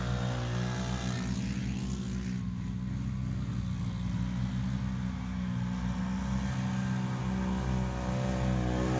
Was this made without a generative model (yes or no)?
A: yes